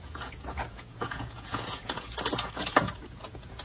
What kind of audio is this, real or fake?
fake